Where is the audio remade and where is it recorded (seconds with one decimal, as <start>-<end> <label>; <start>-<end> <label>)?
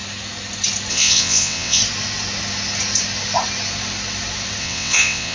0.0-0.9 recorded; 0.9-1.8 remade; 1.8-4.6 recorded; 4.6-5.3 remade